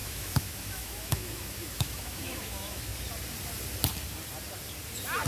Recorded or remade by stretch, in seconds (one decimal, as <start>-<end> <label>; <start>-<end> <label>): 0.0-2.9 remade; 2.9-5.3 recorded